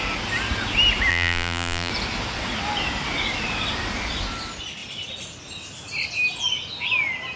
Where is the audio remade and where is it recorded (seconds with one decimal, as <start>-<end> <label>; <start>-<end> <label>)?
0.0-1.1 recorded; 1.1-1.9 remade; 1.9-7.4 recorded

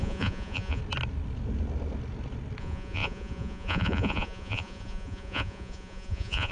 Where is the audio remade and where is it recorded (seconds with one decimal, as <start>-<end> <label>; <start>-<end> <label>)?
0.0-0.8 remade; 0.8-2.6 recorded; 2.6-6.5 remade

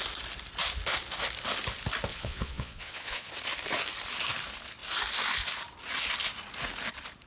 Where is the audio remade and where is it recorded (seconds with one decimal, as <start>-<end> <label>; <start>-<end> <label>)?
0.0-2.1 recorded; 2.1-3.3 remade; 3.3-7.3 recorded

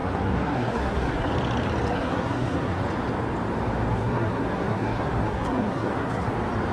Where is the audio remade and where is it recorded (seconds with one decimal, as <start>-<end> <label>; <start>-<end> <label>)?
0.0-1.3 remade; 1.3-1.9 recorded; 1.9-2.8 remade; 2.8-3.9 recorded; 3.9-6.3 remade; 6.3-6.7 recorded

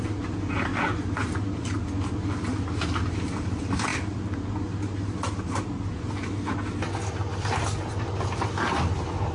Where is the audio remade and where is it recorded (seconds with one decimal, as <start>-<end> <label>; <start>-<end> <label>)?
0.0-0.7 remade; 0.7-3.1 recorded; 3.1-3.9 remade; 3.9-8.0 recorded; 8.0-9.3 remade

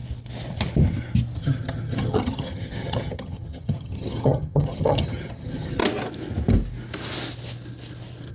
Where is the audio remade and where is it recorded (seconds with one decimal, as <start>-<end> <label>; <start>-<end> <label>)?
0.0-1.4 recorded; 1.4-5.8 remade; 5.8-8.3 recorded

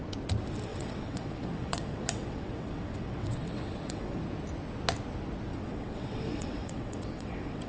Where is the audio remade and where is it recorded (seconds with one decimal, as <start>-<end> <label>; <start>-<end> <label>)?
0.0-0.7 recorded; 0.7-4.2 remade; 4.2-5.5 recorded; 5.5-7.7 remade